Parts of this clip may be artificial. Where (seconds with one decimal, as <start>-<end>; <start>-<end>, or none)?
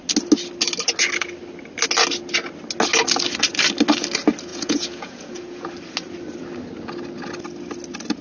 4.5-5.7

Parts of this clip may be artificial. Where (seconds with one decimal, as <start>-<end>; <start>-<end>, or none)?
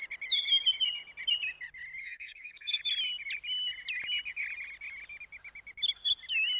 2.0-2.8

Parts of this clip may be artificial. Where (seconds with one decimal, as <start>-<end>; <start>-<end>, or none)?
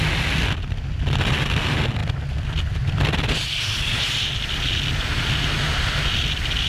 none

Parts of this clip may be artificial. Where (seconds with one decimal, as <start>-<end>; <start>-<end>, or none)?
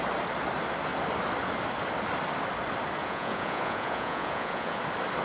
3.0-4.8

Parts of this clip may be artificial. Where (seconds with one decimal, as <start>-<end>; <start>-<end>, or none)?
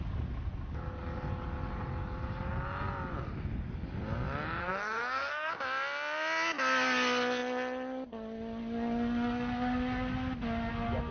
4.6-5.5